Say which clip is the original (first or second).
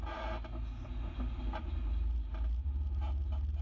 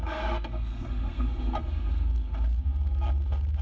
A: first